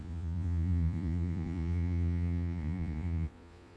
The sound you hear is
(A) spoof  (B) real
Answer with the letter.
A